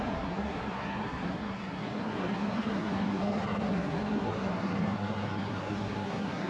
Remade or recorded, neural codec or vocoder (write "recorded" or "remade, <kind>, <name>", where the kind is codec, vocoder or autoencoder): remade, codec, SNAC